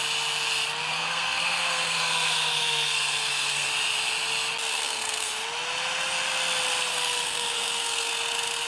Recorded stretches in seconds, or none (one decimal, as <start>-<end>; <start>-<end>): 0.0-0.9; 3.7-4.7; 5.3-6.9; 8.1-8.7